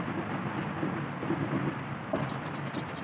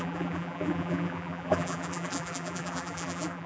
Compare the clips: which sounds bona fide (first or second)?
first